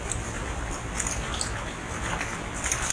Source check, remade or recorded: recorded